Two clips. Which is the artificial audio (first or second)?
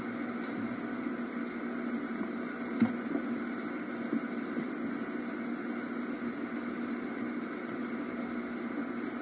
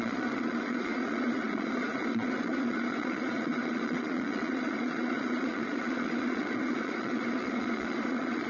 second